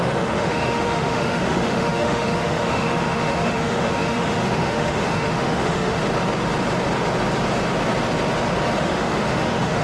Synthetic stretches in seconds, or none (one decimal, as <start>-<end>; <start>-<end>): 0.0-6.0; 8.8-9.8